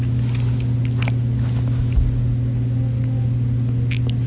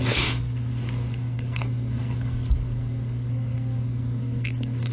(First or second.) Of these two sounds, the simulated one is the second